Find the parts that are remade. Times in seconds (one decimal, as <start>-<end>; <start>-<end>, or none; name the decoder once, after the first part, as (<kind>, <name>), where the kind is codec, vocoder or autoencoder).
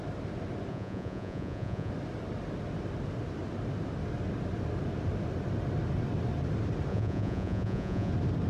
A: 0.7-1.9 (vocoder, Vocos); 6.9-8.1